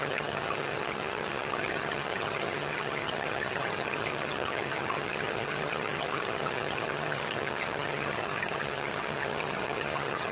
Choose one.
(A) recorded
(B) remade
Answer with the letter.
B